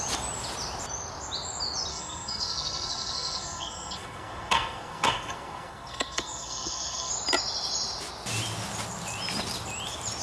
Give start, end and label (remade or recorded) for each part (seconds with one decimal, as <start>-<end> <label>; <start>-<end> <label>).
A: 0.0-1.9 recorded; 1.9-7.1 remade; 7.1-10.2 recorded